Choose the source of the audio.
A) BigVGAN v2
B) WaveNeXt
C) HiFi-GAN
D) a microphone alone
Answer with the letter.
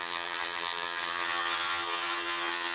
C